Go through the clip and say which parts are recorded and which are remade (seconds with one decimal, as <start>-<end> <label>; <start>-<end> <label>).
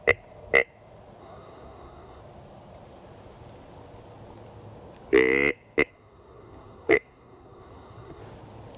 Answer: 0.0-1.2 recorded; 1.2-2.2 remade; 2.2-5.9 recorded; 5.9-8.2 remade; 8.2-8.8 recorded